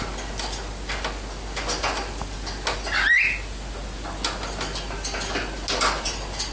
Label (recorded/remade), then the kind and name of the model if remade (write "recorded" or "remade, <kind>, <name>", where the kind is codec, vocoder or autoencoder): recorded